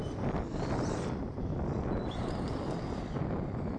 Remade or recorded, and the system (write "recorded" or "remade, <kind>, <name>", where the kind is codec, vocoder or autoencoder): recorded